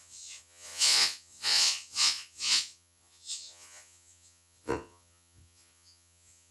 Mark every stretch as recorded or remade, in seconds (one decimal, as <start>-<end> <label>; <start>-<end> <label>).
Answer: 0.0-6.5 remade